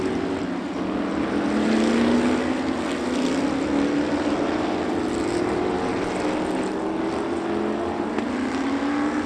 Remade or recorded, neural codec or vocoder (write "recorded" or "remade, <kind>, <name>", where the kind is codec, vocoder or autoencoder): recorded